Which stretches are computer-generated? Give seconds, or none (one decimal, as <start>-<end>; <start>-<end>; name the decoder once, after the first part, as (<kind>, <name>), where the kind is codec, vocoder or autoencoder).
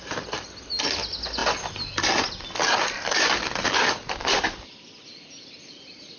none